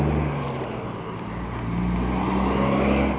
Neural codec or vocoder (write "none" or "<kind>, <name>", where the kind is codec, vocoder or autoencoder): none